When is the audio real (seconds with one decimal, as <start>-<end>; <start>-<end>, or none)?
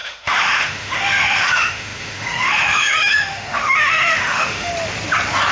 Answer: 4.7-5.5